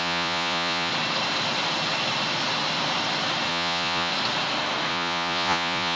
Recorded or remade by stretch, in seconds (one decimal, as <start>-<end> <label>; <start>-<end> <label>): 0.0-0.9 remade; 0.9-3.5 recorded; 3.5-4.1 remade; 4.1-4.9 recorded; 4.9-6.0 remade